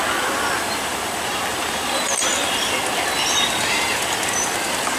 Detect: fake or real real